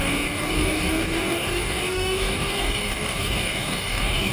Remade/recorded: remade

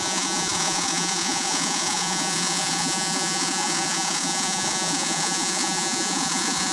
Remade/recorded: remade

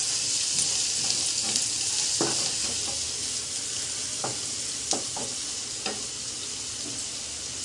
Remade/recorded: recorded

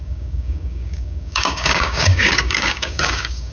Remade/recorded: remade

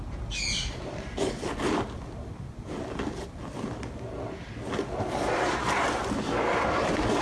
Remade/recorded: recorded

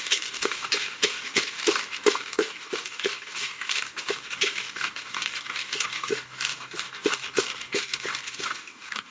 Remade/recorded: remade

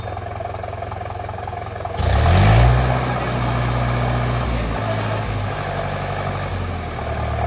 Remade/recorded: recorded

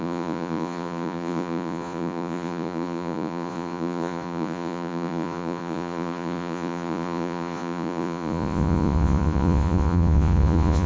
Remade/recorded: remade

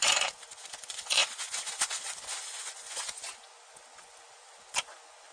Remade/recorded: remade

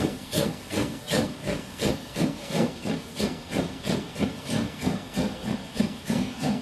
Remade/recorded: remade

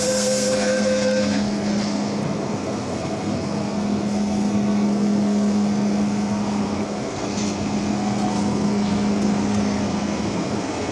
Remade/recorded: remade